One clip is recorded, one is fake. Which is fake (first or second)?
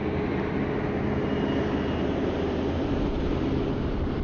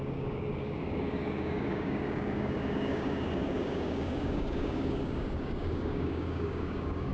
second